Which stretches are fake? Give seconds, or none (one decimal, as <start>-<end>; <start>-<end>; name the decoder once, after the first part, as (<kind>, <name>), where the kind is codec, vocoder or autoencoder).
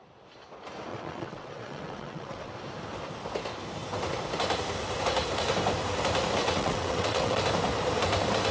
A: 0.9-2.5 (vocoder, WaveNeXt); 6.4-7.4